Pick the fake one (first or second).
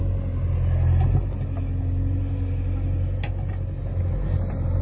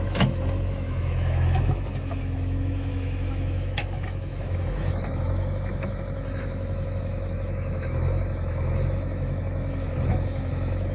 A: second